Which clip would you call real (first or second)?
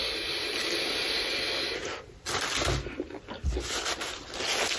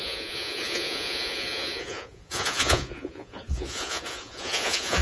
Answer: first